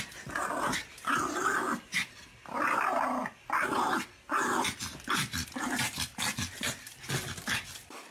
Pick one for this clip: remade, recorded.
recorded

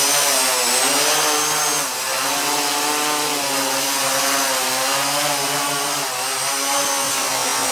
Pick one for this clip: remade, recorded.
recorded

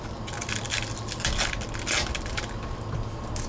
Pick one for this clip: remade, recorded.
recorded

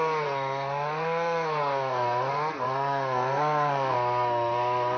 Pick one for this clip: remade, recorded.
remade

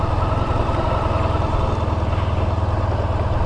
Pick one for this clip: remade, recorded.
recorded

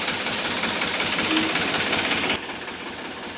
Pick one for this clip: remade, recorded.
recorded